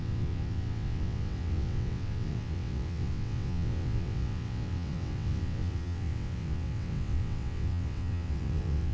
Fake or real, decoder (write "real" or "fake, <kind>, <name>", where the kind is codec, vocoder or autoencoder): fake, vocoder, WaveNeXt